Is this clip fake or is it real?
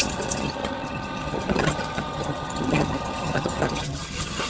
fake